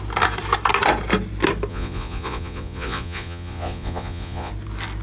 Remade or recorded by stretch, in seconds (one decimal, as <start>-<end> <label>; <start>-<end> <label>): 0.0-1.7 recorded; 1.7-4.5 remade; 4.5-5.0 recorded